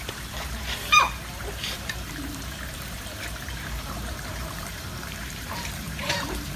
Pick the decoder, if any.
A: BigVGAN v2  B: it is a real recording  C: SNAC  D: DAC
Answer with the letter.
A